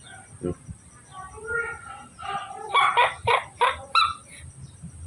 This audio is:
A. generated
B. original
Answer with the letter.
B